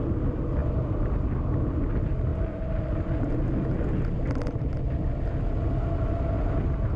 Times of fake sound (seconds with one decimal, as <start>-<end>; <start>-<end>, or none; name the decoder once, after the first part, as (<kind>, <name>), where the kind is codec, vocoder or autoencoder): none

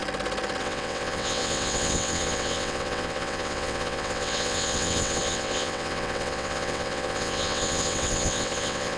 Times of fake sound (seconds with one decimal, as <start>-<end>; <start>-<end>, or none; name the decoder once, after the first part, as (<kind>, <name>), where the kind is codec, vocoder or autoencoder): 0.6-9.0 (vocoder, WaveNeXt)

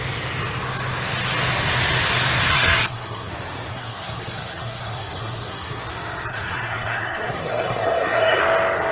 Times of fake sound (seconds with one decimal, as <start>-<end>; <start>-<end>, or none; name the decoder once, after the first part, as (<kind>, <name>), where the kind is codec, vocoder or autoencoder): 2.5-3.3 (codec, SNAC); 3.7-5.8; 6.3-8.4

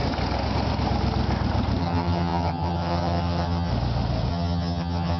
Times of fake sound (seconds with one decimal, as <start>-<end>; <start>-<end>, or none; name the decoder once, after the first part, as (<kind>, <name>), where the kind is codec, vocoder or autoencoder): 1.8-3.7 (vocoder, HiFi-GAN); 4.3-5.2

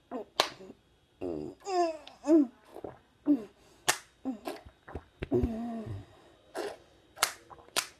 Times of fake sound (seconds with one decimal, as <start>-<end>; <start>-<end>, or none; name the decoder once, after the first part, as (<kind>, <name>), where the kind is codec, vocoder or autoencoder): 6.0-8.0 (vocoder, BigVGAN v2)

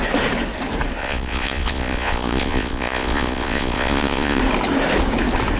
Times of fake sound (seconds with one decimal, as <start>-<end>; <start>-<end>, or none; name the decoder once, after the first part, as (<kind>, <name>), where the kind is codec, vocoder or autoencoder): 1.0-4.4 (vocoder, Vocos)

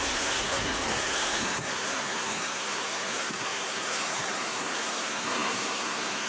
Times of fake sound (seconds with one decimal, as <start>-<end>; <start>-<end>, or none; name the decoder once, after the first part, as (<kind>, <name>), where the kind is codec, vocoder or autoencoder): 0.0-6.3 (codec, SNAC)